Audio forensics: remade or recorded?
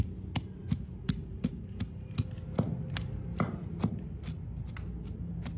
recorded